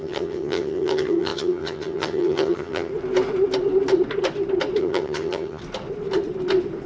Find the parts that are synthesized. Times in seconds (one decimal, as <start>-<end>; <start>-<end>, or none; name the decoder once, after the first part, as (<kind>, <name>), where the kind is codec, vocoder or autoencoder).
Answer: 0.0-2.9 (vocoder, HiFi-GAN); 4.8-5.6